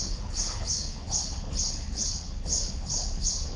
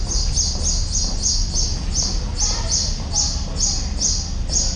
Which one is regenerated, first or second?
first